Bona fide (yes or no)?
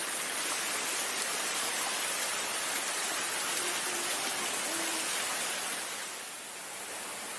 yes